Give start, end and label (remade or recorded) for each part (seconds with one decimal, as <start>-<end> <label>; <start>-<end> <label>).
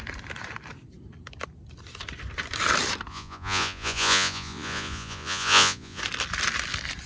0.0-3.1 recorded; 3.1-6.0 remade; 6.0-7.1 recorded